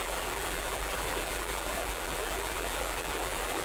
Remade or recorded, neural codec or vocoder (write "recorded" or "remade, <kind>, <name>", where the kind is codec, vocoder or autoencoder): remade, vocoder, BigVGAN v2